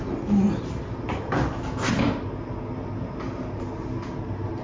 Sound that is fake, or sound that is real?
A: real